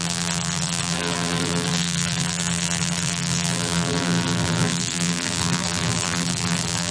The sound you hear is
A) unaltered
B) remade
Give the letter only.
B